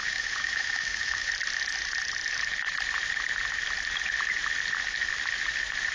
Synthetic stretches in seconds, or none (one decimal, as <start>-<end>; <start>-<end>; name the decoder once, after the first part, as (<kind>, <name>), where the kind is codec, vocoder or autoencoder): 0.0-1.3 (autoencoder, DAC-VAE)